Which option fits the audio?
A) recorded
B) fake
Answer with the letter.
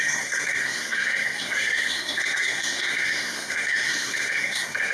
B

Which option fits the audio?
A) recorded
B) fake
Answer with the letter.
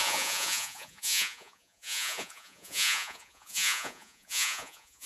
B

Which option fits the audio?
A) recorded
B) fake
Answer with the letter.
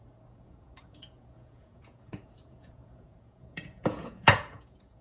B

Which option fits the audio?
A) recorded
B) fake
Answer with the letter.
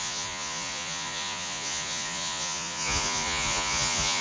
B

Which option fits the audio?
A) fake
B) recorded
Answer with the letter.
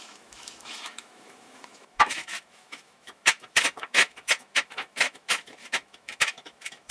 A